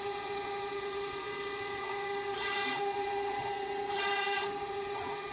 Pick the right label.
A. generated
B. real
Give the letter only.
A